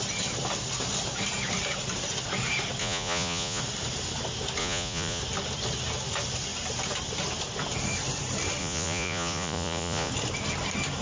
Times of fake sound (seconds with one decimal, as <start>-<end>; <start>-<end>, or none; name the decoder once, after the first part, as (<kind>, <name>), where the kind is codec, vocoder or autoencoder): 2.8-3.6 (vocoder, Vocos); 4.6-5.2; 8.6-10.1